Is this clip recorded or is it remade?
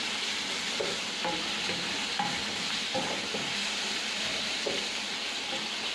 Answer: recorded